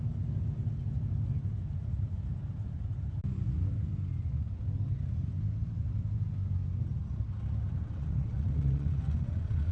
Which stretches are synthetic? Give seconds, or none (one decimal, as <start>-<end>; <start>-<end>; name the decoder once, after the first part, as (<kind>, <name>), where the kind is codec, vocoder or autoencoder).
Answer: 7.8-9.7 (vocoder, WaveNeXt)